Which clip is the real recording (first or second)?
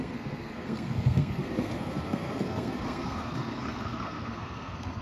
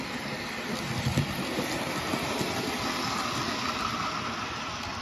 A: second